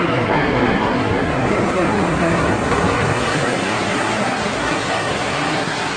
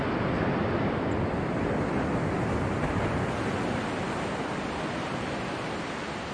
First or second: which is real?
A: second